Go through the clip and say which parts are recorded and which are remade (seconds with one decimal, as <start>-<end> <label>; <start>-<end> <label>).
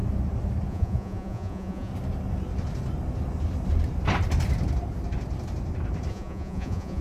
0.0-0.7 recorded; 0.7-1.9 remade; 1.9-6.1 recorded; 6.1-7.0 remade